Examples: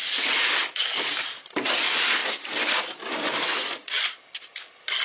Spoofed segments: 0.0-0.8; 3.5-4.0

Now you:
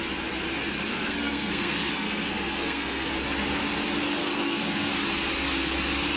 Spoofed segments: 0.9-3.1; 4.2-4.9

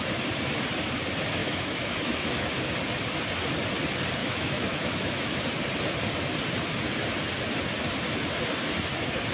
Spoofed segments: 1.4-2.5; 4.2-5.4